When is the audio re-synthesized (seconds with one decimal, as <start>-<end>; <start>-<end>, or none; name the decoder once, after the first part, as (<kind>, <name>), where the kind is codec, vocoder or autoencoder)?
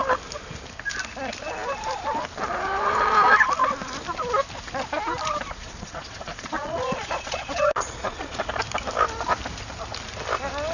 5.6-8.4 (vocoder, Vocos)